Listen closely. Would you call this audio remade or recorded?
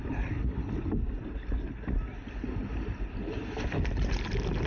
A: recorded